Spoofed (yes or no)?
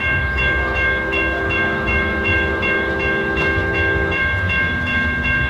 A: yes